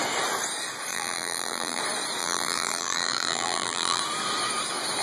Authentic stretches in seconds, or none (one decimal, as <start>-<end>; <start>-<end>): 0.0-0.9; 1.8-2.2; 4.0-5.0